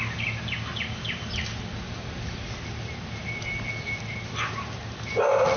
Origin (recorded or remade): recorded